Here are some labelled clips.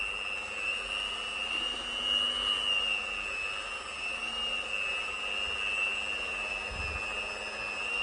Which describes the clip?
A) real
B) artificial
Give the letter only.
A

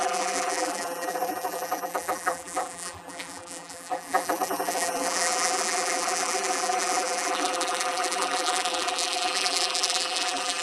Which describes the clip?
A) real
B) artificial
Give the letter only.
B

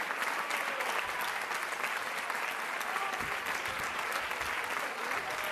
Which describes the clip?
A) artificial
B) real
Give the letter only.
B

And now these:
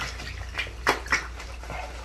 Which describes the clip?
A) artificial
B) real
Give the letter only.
B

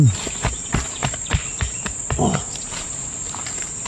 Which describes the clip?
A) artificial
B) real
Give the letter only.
A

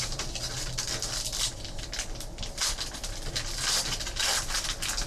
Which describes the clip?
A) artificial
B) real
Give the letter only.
B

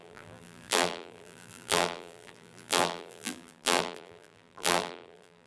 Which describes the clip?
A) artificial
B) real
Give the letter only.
A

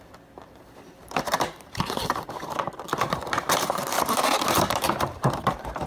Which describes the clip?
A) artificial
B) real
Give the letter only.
A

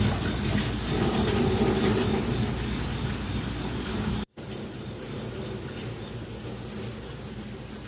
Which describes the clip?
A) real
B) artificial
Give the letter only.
A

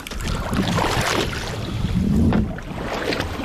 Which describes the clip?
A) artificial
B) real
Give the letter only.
B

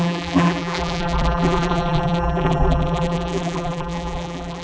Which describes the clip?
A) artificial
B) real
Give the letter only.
A